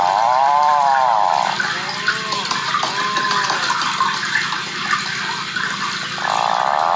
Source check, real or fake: real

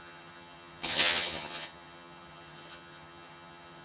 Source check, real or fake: fake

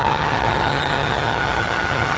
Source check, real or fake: fake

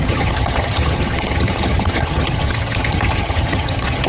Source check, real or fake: fake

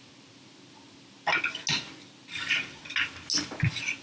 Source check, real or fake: real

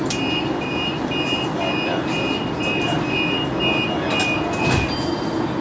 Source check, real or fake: real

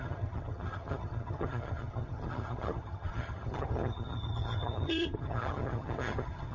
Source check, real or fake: fake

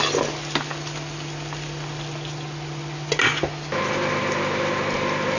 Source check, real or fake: real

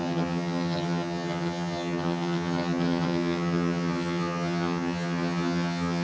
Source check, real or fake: fake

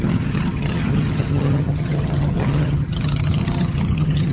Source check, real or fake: fake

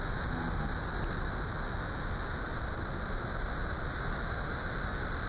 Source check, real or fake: real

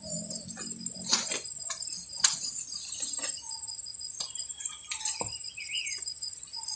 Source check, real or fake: real